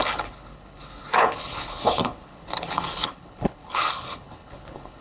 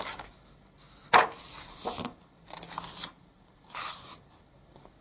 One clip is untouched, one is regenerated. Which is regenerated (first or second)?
first